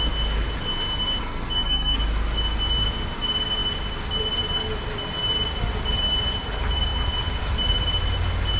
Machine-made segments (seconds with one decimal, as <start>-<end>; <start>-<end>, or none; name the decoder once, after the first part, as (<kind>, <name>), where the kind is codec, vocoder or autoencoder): 1.2-2.0 (codec, SNAC)